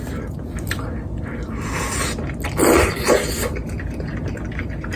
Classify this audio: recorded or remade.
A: recorded